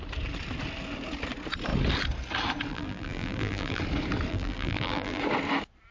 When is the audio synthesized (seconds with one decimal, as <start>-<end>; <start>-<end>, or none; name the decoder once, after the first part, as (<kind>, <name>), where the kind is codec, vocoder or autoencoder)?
2.7-3.8 (vocoder, BigVGAN v2); 4.3-5.2